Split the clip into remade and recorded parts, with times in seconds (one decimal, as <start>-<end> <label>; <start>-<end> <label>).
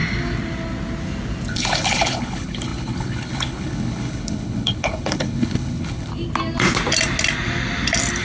0.0-1.5 recorded; 1.5-6.1 remade; 6.1-8.2 recorded